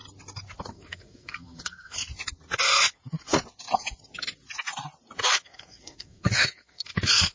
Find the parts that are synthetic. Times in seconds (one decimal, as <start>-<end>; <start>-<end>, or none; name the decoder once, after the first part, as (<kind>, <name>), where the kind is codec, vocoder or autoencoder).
0.7-2.0 (codec, SNAC); 5.3-7.3